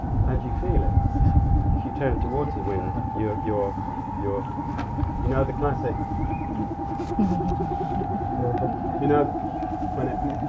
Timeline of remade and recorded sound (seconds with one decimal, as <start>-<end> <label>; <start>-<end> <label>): 0.0-10.5 recorded